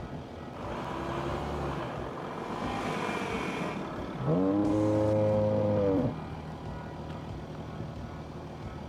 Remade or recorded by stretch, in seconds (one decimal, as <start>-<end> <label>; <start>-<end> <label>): 0.0-8.9 recorded